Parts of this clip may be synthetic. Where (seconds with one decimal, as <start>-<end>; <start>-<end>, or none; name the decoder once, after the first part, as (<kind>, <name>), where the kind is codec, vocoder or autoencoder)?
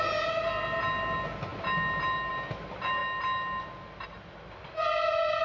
none